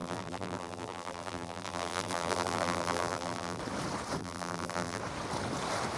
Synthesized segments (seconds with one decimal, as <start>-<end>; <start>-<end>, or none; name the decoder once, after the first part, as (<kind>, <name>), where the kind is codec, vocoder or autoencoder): 0.0-3.6 (vocoder, BigVGAN v2); 4.2-5.0